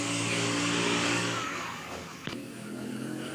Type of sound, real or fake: fake